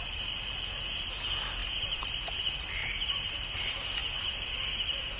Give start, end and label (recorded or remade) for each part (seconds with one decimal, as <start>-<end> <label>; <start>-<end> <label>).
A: 0.0-1.6 recorded; 1.6-2.2 remade; 2.2-2.8 recorded; 2.8-3.6 remade; 3.6-5.2 recorded